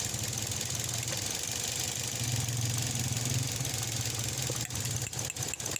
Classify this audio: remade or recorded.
recorded